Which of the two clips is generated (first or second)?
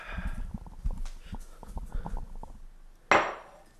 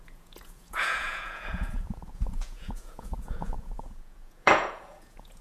second